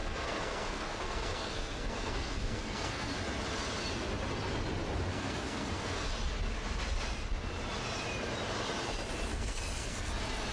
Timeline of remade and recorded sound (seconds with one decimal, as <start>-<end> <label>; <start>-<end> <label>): 0.0-3.1 remade; 3.1-5.1 recorded; 5.1-6.1 remade; 6.1-9.3 recorded; 9.3-10.1 remade; 10.1-10.5 recorded